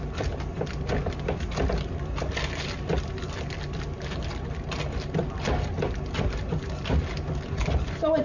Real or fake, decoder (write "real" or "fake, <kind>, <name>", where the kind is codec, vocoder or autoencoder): real